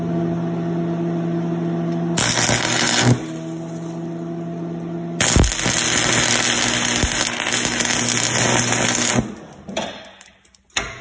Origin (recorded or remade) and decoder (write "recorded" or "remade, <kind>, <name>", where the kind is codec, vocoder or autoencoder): recorded